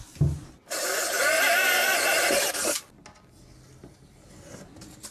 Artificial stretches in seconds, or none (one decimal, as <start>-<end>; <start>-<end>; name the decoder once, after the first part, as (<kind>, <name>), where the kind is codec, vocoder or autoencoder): none